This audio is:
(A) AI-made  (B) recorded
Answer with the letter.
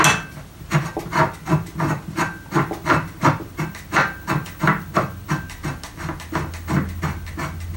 B